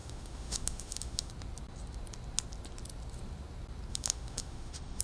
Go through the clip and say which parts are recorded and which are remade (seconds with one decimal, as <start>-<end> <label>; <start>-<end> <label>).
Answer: 0.0-1.3 remade; 1.3-3.9 recorded; 3.9-5.0 remade